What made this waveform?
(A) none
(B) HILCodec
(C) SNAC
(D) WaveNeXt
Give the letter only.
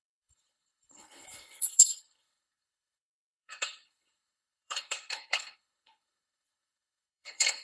B